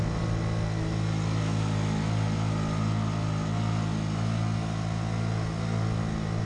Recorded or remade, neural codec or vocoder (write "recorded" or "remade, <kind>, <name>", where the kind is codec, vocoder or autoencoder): recorded